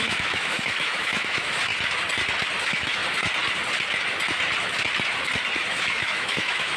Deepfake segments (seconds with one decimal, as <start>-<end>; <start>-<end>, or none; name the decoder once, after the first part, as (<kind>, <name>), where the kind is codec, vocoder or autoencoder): 0.0-1.7 (autoencoder, DAC-VAE); 2.6-3.0; 5.7-6.8